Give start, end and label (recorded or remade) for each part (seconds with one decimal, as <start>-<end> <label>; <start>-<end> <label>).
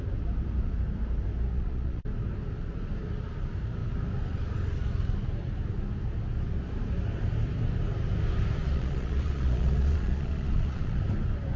0.0-1.5 recorded; 1.5-2.0 remade; 2.0-8.6 recorded; 8.6-11.0 remade; 11.0-11.6 recorded